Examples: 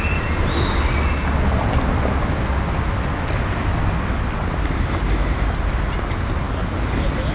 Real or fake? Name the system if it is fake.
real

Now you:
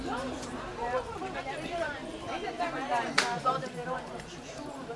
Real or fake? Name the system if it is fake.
fake, vocoder, BigVGAN v2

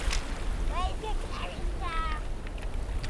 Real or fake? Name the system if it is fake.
real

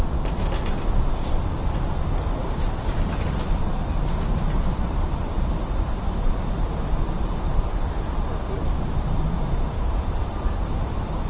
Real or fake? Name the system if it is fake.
real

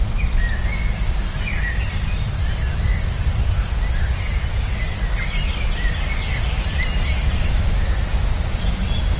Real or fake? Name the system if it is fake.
real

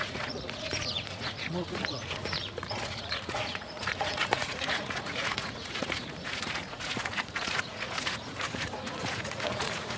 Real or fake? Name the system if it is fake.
fake, vocoder, Vocos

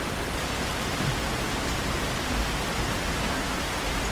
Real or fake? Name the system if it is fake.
real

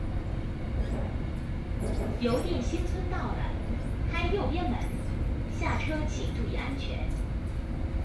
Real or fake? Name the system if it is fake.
real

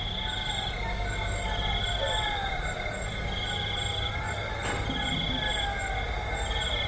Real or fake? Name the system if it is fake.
real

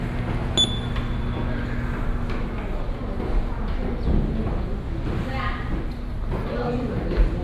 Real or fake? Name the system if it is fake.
real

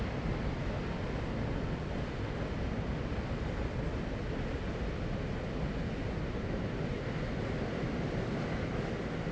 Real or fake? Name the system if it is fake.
real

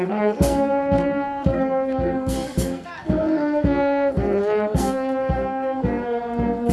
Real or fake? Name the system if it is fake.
fake, codec, SNAC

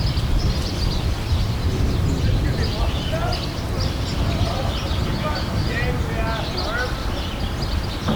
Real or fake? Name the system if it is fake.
real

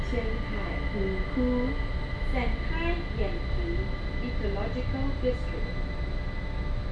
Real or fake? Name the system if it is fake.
real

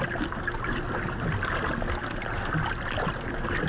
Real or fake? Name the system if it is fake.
real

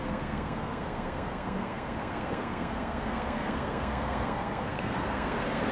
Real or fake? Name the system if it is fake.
fake, codec, SNAC